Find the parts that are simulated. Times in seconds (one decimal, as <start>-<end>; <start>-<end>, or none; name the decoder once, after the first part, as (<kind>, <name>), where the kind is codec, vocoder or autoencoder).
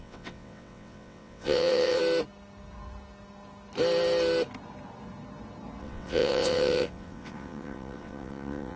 0.0-2.0 (vocoder, WaveNeXt); 5.8-8.8